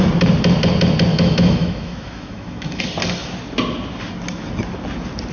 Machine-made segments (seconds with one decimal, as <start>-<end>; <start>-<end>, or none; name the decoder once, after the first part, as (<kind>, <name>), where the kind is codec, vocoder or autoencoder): 1.1-2.8 (autoencoder, DAC-VAE)